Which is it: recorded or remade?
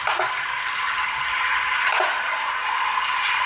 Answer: recorded